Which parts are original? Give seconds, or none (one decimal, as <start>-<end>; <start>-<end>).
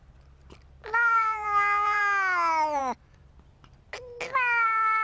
0.0-1.1; 2.0-5.0